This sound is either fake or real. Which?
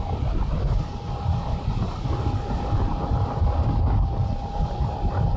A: real